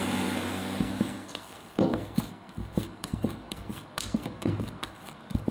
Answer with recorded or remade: remade